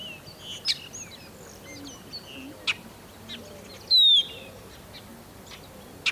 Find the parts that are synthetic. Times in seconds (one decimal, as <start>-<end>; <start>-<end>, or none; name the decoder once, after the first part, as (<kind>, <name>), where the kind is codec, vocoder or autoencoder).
none